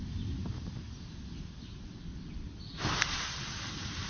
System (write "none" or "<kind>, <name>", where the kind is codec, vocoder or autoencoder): none